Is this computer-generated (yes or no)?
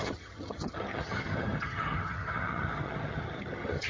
yes